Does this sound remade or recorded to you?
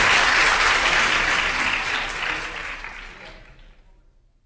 recorded